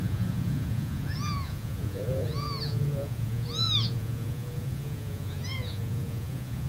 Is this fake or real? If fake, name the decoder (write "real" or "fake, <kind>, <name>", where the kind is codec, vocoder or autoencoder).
fake, vocoder, Vocos